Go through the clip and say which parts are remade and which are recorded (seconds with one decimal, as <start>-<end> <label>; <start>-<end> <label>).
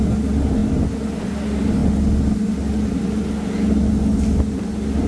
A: 0.0-5.1 recorded